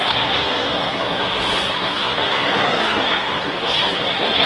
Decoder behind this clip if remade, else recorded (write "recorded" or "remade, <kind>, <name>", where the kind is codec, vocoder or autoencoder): remade, codec, SNAC